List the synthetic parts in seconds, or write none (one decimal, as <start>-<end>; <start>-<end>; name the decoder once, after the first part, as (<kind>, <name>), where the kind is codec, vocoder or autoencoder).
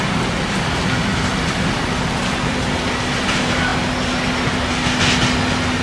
none